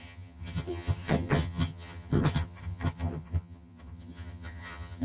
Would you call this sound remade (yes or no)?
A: yes